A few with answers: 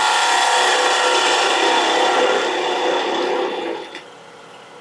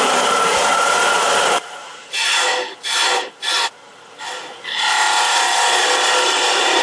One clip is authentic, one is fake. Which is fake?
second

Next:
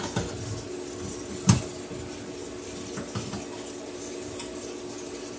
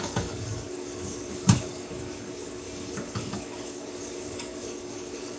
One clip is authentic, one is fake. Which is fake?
second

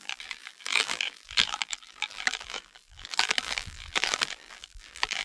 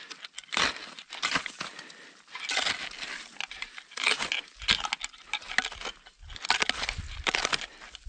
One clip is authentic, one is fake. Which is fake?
first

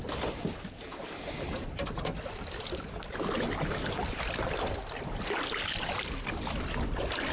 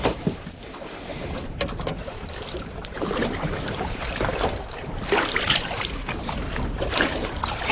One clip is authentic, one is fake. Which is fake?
second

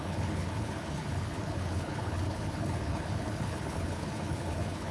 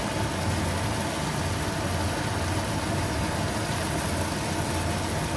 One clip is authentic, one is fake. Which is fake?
first